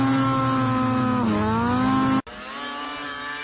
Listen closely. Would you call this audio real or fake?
real